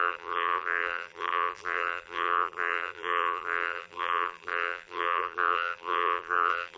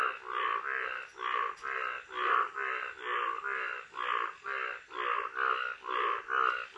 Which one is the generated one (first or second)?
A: first